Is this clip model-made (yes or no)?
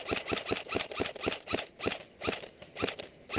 no